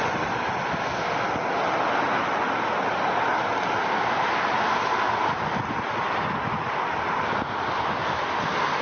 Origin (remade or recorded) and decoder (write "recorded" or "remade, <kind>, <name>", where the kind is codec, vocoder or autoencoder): recorded